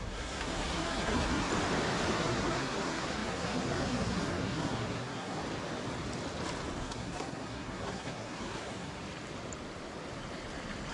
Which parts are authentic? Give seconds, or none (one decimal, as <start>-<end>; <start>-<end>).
1.5-2.1; 5.4-6.8; 9.0-10.9